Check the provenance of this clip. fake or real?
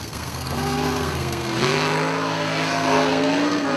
fake